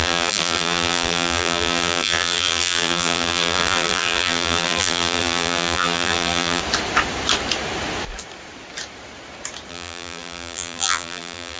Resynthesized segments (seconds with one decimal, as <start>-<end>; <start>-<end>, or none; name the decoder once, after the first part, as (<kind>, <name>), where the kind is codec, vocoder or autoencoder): 0.0-6.6 (vocoder, BigVGAN v2); 9.7-11.6